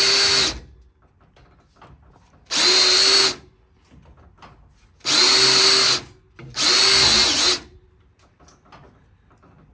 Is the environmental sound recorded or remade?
recorded